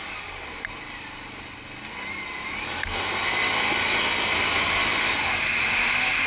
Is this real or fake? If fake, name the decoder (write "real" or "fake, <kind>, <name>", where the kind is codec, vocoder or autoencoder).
real